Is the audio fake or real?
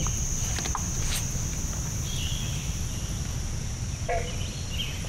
real